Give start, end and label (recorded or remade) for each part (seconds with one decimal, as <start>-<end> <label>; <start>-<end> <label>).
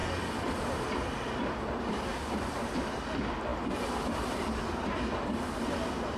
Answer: 0.0-6.2 recorded